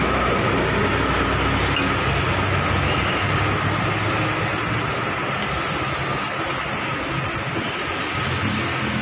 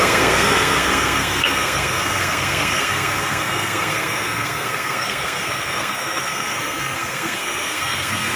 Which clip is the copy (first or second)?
second